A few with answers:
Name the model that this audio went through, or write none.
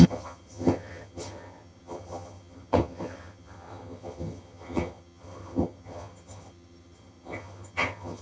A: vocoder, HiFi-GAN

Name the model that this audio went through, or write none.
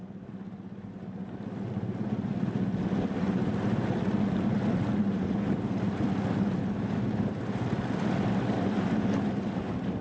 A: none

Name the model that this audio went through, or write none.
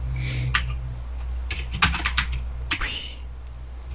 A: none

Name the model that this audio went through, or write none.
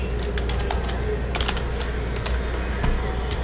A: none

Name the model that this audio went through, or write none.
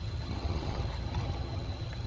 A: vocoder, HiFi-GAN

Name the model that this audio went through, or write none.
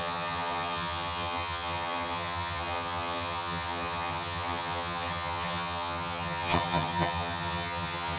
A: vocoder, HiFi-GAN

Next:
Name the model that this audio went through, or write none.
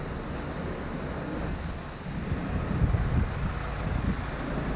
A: none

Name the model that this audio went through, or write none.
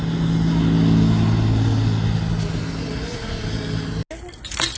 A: none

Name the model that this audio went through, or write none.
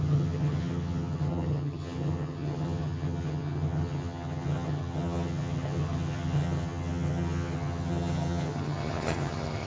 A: vocoder, HiFi-GAN